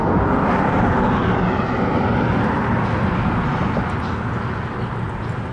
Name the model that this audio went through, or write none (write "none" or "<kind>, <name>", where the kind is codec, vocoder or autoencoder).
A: none